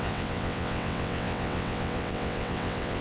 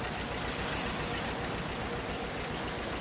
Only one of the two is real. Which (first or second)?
second